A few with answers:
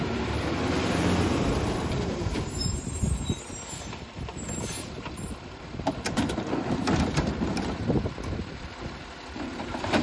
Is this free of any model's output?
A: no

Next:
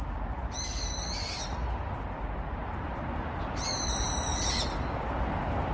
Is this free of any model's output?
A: yes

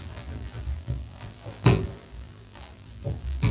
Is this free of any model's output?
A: no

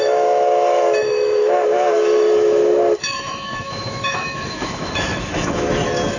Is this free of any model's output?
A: no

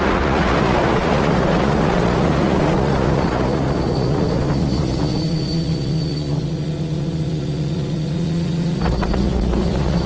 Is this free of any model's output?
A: no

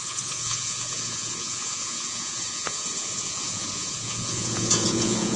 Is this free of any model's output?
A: no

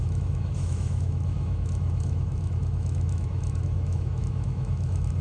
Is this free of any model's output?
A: no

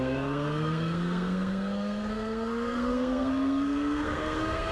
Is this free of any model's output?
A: no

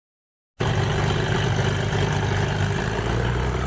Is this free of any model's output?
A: yes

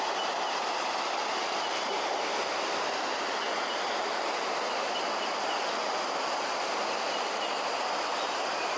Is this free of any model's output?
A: yes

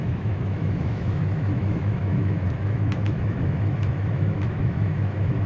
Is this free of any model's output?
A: no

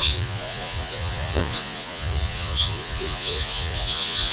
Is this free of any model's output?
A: no